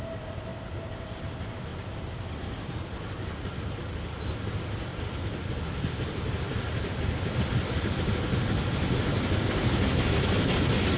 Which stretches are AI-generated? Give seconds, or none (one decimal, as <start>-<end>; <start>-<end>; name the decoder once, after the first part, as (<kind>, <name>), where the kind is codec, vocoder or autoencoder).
0.5-1.2 (vocoder, BigVGAN v2); 4.9-7.9